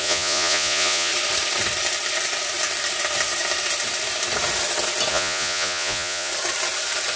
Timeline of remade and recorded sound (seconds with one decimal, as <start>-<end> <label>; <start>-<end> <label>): 0.0-1.1 remade; 1.1-5.1 recorded; 5.1-6.3 remade; 6.3-7.2 recorded